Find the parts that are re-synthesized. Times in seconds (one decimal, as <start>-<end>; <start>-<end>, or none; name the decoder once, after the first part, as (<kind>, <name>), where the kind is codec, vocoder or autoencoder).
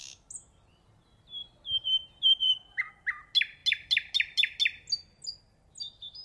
1.4-2.9 (vocoder, BigVGAN v2)